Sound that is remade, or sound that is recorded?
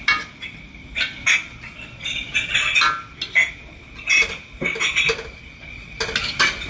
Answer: recorded